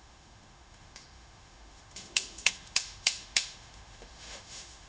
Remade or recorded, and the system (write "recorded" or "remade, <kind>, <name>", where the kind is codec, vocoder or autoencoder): remade, autoencoder, DAC-VAE